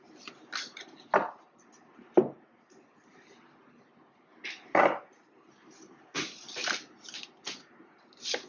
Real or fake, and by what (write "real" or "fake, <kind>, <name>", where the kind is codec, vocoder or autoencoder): real